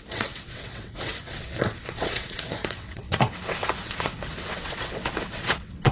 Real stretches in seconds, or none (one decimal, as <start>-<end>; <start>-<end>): none